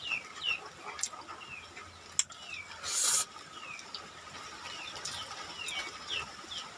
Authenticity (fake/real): real